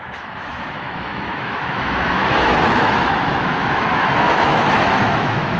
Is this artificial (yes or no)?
yes